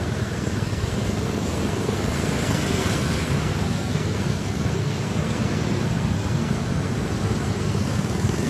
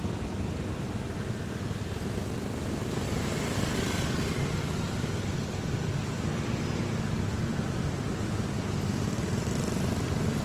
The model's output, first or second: first